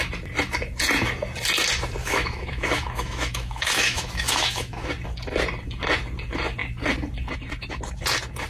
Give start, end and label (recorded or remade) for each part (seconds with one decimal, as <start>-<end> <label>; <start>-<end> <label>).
0.0-2.0 recorded; 2.0-4.9 remade; 4.9-8.5 recorded